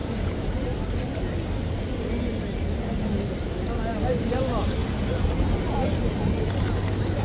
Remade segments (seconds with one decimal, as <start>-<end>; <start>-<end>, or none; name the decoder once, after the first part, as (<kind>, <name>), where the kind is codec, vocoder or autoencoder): 0.0-4.3 (vocoder, BigVGAN v2)